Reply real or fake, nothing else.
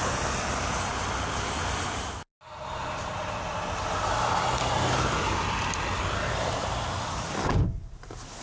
real